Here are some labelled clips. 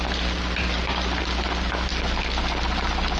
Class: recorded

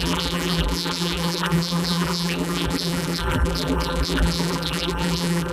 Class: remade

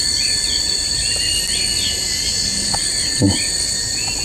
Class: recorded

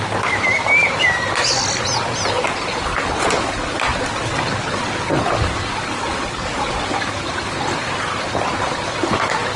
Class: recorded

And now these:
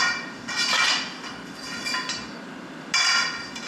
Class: recorded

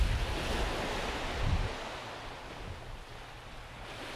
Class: recorded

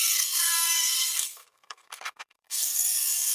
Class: remade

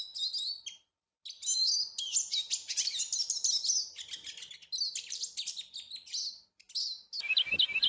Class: recorded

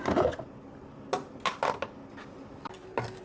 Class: recorded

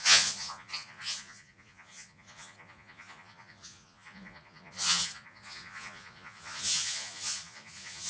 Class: remade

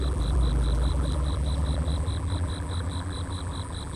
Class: remade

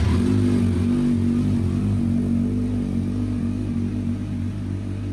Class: recorded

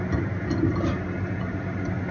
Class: recorded